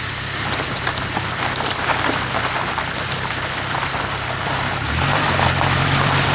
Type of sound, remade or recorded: remade